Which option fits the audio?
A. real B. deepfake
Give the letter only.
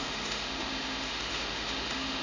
B